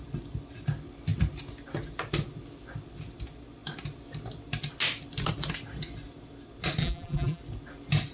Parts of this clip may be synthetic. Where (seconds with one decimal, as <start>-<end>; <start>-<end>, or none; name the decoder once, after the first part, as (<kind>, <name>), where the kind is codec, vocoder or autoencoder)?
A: 6.8-7.4 (vocoder, BigVGAN v2)